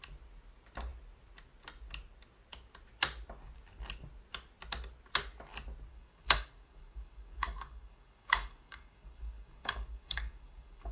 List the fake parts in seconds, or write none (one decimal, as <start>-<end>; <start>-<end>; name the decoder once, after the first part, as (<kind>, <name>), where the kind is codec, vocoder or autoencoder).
5.9-10.9 (codec, DAC)